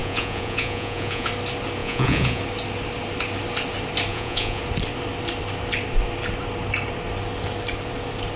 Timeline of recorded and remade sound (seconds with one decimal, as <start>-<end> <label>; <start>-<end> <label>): 0.0-1.3 remade; 1.3-1.8 recorded; 1.8-2.4 remade; 2.4-4.1 recorded; 4.1-4.6 remade; 4.6-8.4 recorded